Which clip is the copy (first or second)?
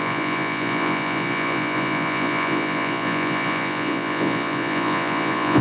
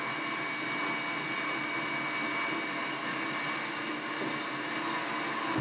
first